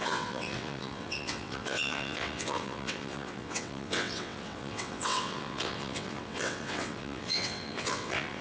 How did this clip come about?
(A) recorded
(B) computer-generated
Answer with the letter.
B